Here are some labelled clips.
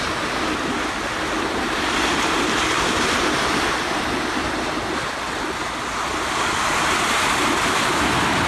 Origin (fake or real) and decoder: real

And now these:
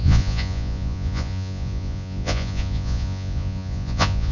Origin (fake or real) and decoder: fake, vocoder, Vocos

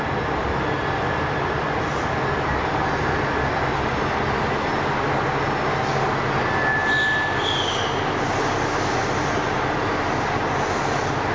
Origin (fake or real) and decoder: real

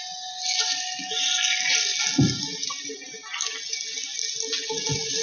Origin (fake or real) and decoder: real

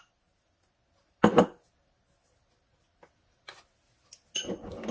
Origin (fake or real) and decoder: real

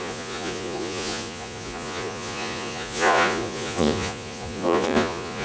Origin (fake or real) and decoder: fake, vocoder, Vocos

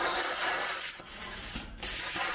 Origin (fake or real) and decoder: real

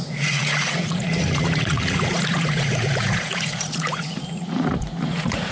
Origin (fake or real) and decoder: fake, vocoder, Vocos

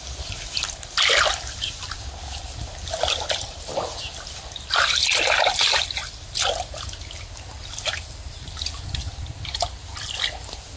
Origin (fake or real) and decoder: real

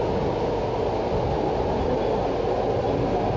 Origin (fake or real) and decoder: real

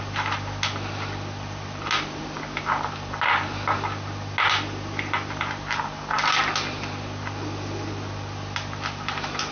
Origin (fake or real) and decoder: real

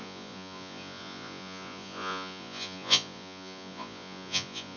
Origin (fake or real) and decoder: fake, vocoder, Vocos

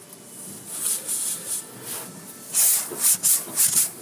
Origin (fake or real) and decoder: real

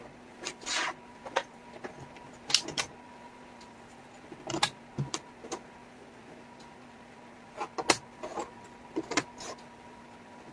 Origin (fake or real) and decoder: real